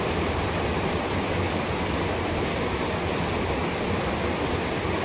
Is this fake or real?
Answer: real